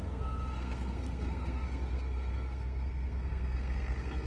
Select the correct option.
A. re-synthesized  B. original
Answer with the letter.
A